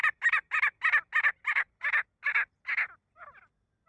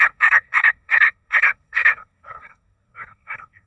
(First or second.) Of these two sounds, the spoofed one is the second